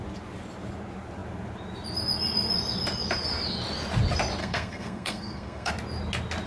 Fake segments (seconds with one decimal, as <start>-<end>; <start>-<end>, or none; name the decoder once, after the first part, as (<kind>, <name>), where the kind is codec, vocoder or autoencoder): 4.4-5.7 (codec, SNAC)